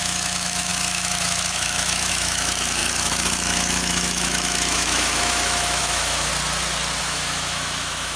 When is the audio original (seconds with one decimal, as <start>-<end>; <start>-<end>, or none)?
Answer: 6.3-7.0